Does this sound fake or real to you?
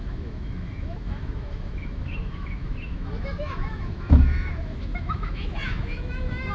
fake